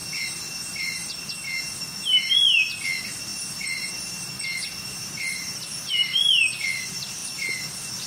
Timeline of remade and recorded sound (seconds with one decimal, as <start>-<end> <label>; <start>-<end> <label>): 0.0-8.1 recorded